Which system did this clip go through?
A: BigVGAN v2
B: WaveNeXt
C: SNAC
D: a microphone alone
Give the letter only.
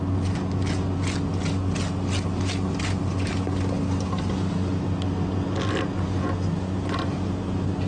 D